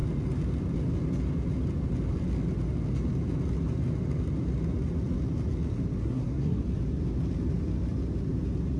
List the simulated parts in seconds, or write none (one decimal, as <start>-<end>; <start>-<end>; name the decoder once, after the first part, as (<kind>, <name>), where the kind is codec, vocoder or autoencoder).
6.0-6.6 (codec, SNAC)